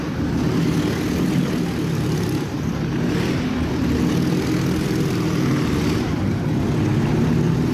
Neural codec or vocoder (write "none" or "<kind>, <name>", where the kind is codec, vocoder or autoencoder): none